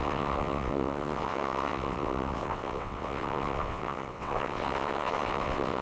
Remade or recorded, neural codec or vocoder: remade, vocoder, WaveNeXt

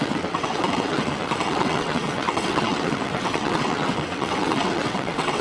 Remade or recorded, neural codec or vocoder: remade, vocoder, WaveNeXt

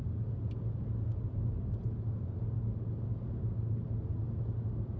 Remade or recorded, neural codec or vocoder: recorded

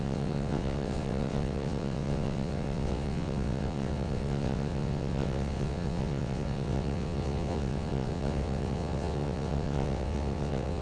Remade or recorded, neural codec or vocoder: remade, vocoder, WaveNeXt